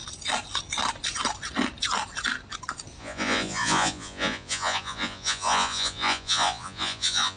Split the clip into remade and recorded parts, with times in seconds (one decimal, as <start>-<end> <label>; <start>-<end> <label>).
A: 0.0-3.0 recorded; 3.0-7.4 remade